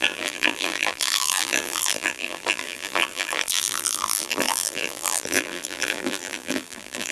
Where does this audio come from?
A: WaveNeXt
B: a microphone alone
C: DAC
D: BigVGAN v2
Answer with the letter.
D